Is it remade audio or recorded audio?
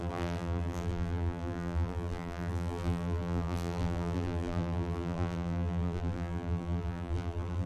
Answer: remade